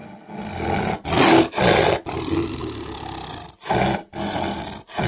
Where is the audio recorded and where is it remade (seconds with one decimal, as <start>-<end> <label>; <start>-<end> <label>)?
0.0-5.1 recorded